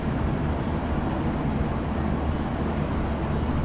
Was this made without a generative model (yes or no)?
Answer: yes